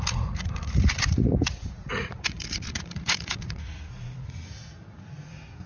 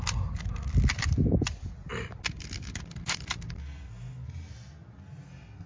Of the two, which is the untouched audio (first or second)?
second